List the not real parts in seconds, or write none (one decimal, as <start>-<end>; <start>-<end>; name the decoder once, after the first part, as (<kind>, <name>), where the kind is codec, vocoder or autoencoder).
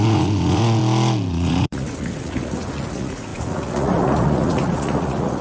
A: 0.0-0.8 (vocoder, Vocos); 1.3-5.4